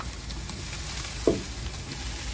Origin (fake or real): real